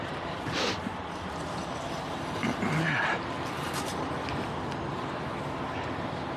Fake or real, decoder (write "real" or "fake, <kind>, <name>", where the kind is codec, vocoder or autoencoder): real